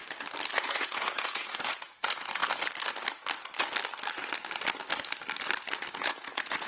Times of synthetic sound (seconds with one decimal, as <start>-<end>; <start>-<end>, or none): 0.6-2.4; 5.9-6.7